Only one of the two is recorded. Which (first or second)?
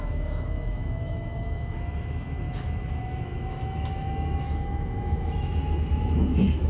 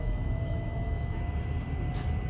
second